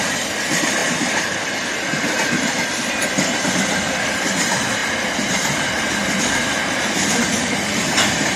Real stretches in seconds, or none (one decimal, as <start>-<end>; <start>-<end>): none